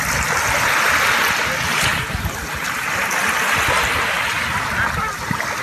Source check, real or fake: real